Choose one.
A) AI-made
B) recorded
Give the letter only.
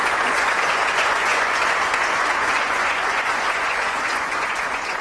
A